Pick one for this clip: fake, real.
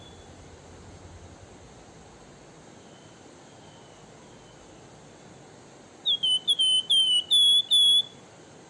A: real